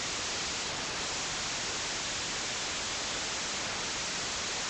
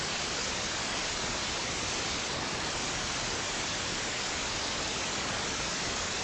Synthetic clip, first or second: second